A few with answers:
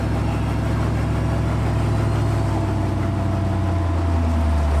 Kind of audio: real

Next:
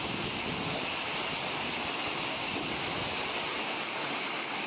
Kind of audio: real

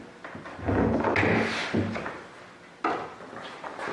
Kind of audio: real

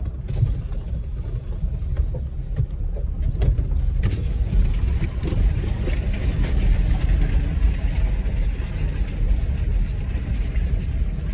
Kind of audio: real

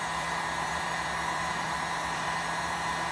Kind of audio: fake